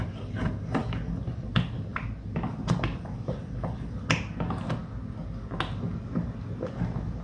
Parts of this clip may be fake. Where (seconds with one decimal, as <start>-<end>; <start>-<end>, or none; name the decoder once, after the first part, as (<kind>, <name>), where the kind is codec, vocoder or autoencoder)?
none